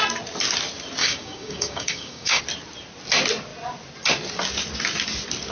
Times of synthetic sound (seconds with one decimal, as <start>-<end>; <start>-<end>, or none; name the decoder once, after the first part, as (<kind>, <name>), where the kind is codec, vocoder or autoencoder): 1.0-2.4 (codec, DAC)